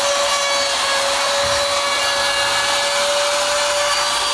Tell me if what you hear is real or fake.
real